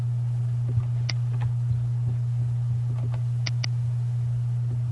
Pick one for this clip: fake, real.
real